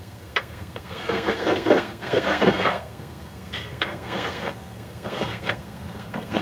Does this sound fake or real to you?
fake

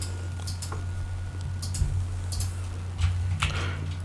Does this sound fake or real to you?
real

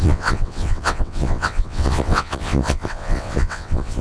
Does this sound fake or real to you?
fake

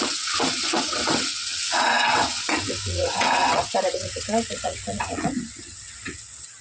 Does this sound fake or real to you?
fake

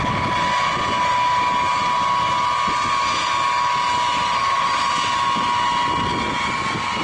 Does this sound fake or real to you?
real